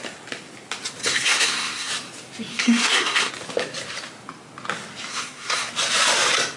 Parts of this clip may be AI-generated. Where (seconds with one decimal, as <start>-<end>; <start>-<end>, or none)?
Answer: 1.0-1.9; 2.5-3.3; 5.1-5.7